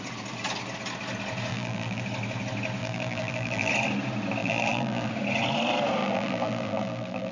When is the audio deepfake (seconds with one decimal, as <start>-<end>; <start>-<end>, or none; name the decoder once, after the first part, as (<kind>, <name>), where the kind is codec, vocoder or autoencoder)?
1.5-2.0 (vocoder, BigVGAN v2); 2.8-3.7; 4.4-5.1; 6.0-7.3